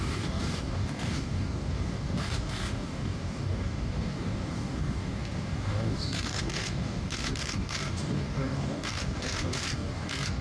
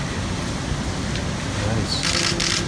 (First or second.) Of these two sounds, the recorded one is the second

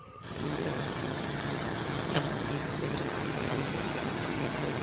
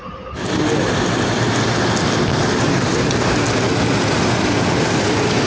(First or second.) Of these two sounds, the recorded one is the second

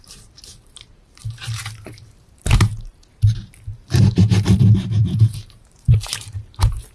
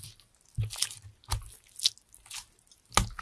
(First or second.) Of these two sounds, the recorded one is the second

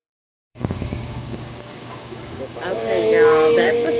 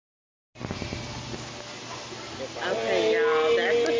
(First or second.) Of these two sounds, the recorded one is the second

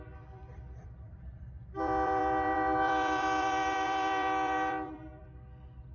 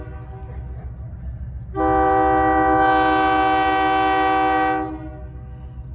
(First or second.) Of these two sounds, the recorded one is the second